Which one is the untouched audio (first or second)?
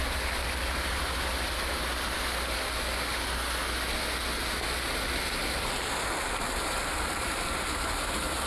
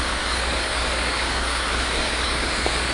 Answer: first